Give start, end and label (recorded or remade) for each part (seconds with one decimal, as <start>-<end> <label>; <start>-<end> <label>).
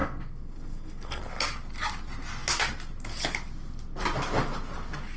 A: 0.0-1.2 remade; 1.2-5.2 recorded